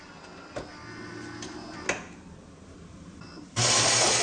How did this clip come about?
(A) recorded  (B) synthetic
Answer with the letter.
A